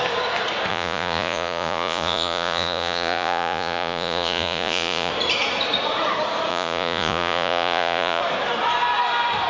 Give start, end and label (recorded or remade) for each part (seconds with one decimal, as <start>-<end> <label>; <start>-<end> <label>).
0.0-0.7 recorded; 0.7-5.1 remade; 5.1-6.5 recorded; 6.5-8.2 remade; 8.2-9.5 recorded